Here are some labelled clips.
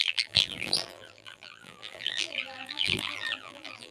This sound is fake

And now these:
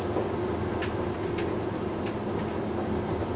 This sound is real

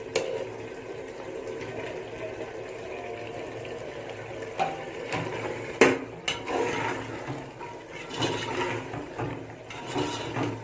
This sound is real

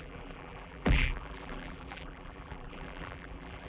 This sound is fake